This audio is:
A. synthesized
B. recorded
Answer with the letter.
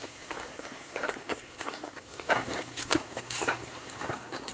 A